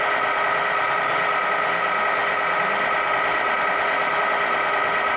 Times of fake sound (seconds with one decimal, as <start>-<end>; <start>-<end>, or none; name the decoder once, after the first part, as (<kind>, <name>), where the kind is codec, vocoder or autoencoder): none